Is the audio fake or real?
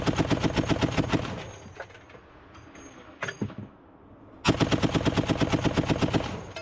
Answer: real